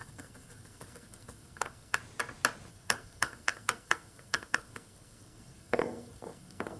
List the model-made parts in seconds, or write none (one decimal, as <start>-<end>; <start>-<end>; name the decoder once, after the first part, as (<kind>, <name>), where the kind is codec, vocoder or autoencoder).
0.0-2.0 (codec, SNAC); 2.7-6.8